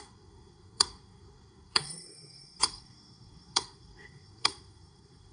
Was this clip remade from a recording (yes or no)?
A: yes